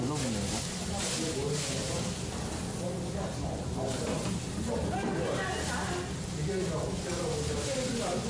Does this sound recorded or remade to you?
recorded